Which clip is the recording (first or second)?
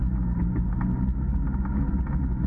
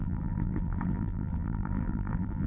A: first